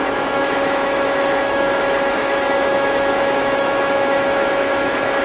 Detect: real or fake fake